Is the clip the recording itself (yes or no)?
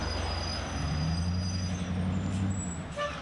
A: yes